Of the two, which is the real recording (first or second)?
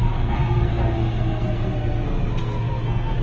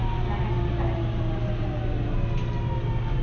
second